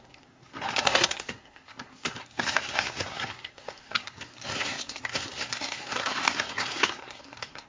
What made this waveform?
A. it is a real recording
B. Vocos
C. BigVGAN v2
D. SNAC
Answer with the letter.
D